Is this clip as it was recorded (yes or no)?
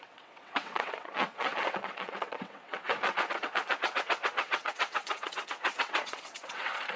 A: no